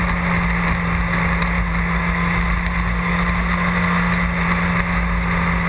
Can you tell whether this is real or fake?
real